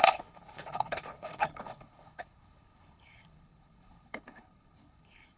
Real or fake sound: fake